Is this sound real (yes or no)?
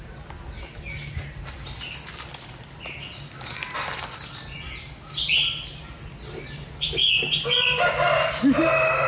yes